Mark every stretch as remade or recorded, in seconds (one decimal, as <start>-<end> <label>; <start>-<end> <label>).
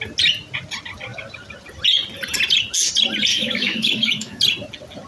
0.0-3.3 recorded; 3.3-4.4 remade; 4.4-5.1 recorded